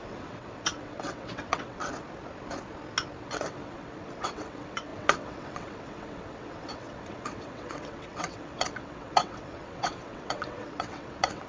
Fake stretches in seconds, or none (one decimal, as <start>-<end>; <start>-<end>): 0.0-1.8; 3.2-11.5